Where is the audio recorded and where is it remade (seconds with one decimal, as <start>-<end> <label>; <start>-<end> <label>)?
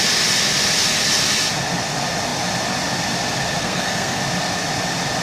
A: 0.0-3.6 recorded; 3.6-4.2 remade; 4.2-5.2 recorded